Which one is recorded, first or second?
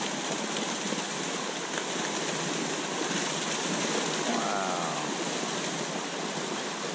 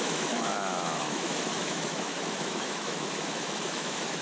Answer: first